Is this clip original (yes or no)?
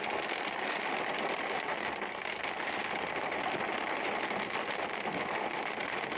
yes